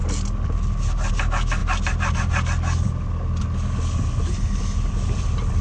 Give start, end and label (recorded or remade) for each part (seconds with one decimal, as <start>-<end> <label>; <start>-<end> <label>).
0.0-5.6 recorded